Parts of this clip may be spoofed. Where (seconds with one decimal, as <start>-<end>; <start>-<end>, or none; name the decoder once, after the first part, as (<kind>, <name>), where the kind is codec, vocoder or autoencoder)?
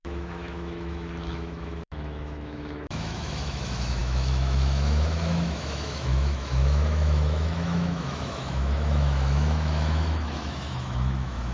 0.0-11.5 (autoencoder, DAC-VAE)